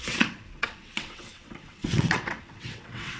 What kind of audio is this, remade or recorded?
remade